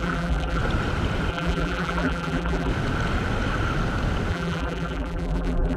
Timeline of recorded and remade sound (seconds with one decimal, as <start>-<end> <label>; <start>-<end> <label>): 0.0-0.6 remade; 0.6-1.3 recorded; 1.3-2.7 remade; 2.7-4.3 recorded; 4.3-5.8 remade